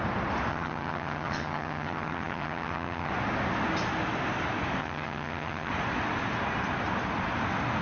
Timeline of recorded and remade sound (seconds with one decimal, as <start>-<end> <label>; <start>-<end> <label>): 0.0-0.5 recorded; 0.5-3.1 remade; 3.1-4.8 recorded; 4.8-5.7 remade; 5.7-7.8 recorded